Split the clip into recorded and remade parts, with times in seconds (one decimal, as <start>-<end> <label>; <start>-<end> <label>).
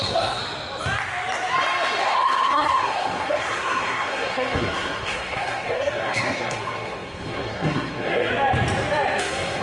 0.0-0.4 remade; 0.4-2.0 recorded; 2.0-8.3 remade; 8.3-9.2 recorded; 9.2-9.6 remade